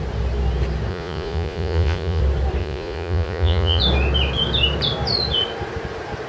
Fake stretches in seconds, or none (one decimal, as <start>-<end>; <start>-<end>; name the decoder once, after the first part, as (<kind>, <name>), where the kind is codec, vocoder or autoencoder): 0.9-2.2 (vocoder, Vocos); 2.6-3.8